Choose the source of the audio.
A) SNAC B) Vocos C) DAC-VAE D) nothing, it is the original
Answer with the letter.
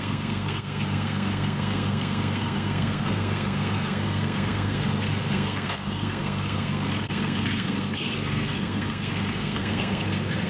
A